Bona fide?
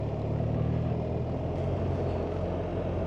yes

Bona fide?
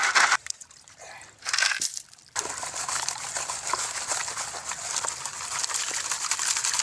yes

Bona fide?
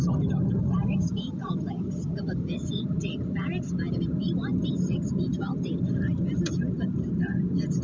yes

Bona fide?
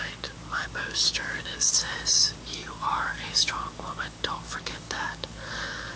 no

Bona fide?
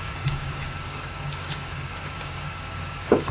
no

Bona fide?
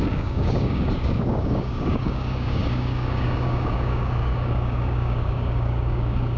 no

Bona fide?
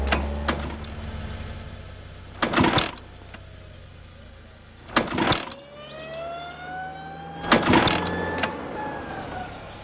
yes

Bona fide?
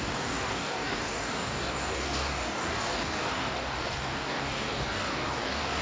no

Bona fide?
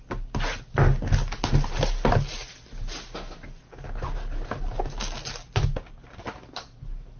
yes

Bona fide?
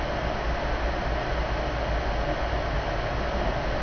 yes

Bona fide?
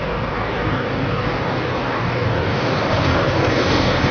no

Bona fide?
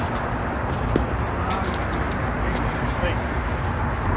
yes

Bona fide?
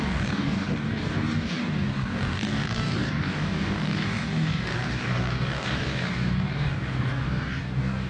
no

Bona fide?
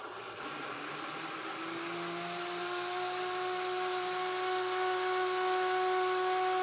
yes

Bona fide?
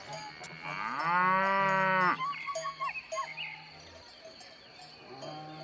yes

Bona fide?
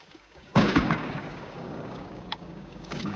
no